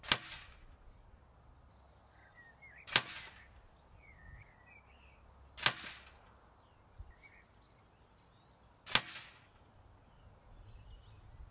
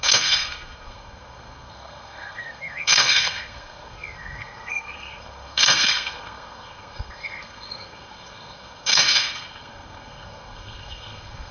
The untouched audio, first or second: first